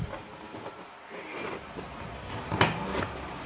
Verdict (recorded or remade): recorded